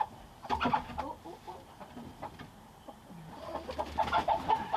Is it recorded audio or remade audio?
remade